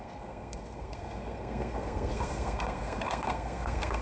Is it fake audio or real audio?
fake